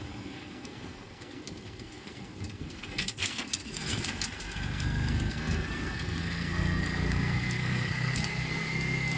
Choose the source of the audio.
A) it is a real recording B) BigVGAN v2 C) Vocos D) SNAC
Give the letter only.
D